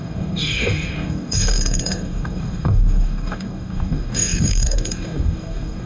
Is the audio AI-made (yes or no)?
yes